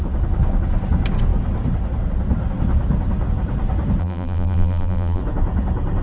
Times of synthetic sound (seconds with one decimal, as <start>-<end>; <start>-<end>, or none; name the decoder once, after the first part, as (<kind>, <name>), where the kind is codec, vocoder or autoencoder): 4.0-5.2 (vocoder, BigVGAN v2)